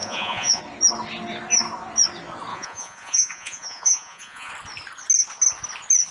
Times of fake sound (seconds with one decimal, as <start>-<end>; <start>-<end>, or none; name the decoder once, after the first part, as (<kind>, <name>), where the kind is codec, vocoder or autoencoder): 0.0-0.6 (vocoder, Vocos); 2.5-4.5

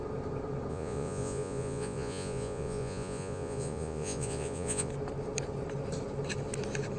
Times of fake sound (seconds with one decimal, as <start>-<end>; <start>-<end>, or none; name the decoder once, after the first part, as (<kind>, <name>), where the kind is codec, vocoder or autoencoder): 0.7-4.9 (vocoder, Vocos)

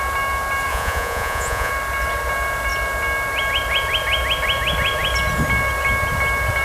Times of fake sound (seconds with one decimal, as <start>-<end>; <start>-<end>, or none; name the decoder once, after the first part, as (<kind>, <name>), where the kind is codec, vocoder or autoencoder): 0.7-1.7 (vocoder, Vocos)

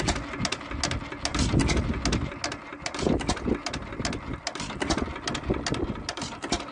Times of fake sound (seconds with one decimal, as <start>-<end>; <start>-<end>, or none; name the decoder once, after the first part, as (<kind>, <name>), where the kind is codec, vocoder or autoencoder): none

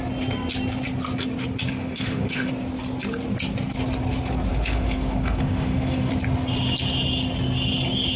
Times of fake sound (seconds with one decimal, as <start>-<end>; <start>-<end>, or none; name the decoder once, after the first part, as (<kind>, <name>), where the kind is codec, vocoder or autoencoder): 1.8-2.5 (autoencoder, DAC-VAE); 4.5-6.1